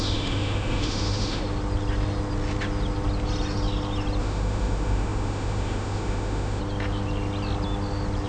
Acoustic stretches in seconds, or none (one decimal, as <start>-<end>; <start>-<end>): 1.4-4.2; 6.6-8.3